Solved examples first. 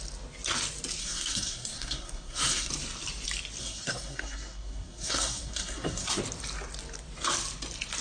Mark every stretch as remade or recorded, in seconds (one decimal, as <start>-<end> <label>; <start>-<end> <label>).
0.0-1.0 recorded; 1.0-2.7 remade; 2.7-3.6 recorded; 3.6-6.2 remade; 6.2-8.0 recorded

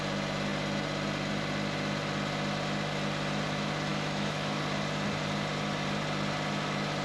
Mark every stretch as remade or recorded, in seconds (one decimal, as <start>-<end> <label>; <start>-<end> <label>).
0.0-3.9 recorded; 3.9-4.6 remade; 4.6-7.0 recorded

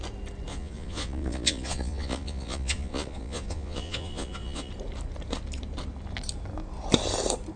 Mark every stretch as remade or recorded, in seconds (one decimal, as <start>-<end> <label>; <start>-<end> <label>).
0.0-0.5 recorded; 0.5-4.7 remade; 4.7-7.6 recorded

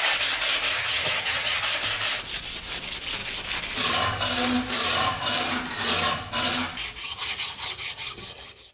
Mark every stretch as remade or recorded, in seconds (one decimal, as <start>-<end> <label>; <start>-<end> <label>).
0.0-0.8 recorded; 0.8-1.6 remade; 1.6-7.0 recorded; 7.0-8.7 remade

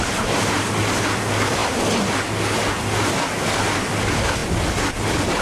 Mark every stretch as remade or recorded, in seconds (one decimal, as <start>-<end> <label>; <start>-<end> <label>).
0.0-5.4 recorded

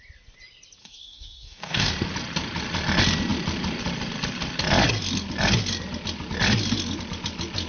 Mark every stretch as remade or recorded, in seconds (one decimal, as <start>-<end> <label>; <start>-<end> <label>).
0.0-0.8 recorded; 0.8-1.9 remade; 1.9-7.7 recorded